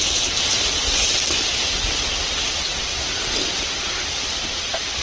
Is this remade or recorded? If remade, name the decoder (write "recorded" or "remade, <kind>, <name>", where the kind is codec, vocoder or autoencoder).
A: recorded